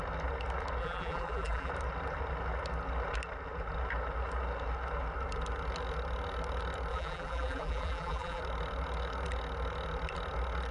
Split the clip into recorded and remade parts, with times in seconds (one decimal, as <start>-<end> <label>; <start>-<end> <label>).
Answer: 0.0-0.8 recorded; 0.8-1.7 remade; 1.7-6.9 recorded; 6.9-8.4 remade; 8.4-10.7 recorded